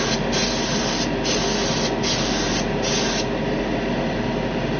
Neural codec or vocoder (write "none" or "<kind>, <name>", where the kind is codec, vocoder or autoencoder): none